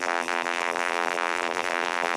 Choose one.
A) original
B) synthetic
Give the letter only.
B